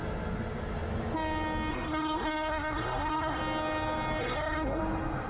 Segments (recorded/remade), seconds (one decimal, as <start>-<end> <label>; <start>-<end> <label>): 0.0-1.7 recorded; 1.7-3.4 remade; 3.4-4.2 recorded; 4.2-4.8 remade; 4.8-5.3 recorded